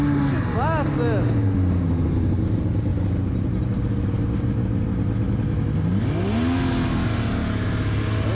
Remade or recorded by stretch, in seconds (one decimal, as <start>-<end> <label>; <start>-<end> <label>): 0.0-8.3 recorded